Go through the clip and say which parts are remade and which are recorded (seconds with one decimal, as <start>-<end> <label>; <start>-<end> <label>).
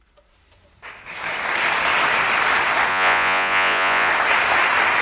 0.0-2.9 recorded; 2.9-4.1 remade; 4.1-5.0 recorded